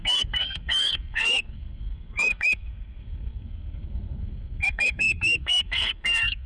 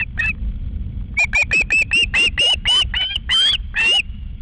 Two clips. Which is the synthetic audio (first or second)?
first